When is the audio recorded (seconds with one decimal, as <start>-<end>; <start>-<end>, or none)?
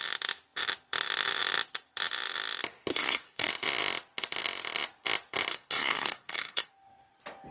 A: 0.0-2.9; 3.5-5.5; 6.7-7.5